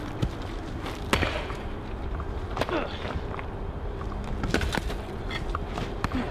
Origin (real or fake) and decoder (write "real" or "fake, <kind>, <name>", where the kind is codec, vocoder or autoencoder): real